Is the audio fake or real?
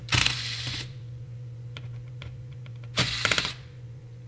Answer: fake